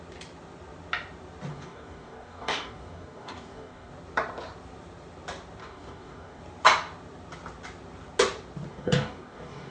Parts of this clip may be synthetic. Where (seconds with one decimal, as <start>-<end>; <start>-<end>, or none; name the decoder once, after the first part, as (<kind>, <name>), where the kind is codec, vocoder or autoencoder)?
1.5-3.9 (codec, DAC); 5.6-6.4; 8.7-9.7